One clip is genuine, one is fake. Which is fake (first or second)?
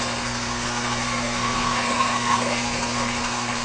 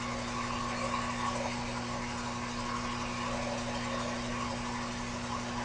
first